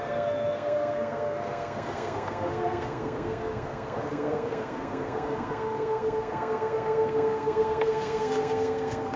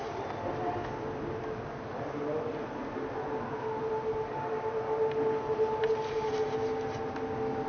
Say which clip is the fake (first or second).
first